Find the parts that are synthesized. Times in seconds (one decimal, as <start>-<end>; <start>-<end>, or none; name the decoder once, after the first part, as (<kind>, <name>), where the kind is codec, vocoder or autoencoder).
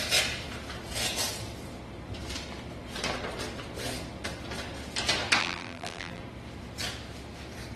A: 5.4-6.2 (vocoder, BigVGAN v2)